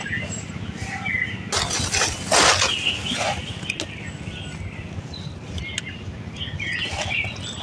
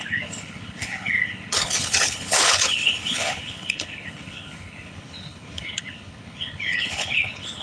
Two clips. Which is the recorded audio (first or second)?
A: first